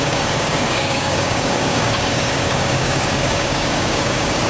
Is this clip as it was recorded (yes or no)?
no